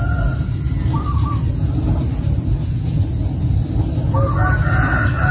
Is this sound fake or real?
real